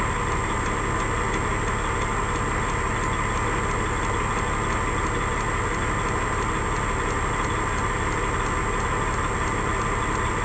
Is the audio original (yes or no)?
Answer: yes